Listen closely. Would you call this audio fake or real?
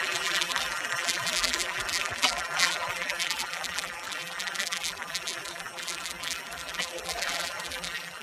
fake